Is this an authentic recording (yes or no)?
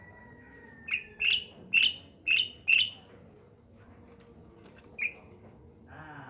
yes